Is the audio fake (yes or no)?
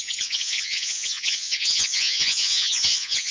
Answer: yes